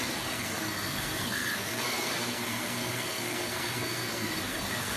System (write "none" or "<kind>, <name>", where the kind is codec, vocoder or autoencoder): codec, SNAC